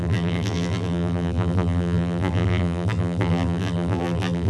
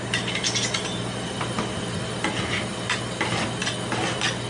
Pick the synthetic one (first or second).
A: first